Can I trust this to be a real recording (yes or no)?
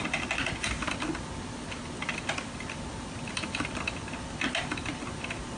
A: yes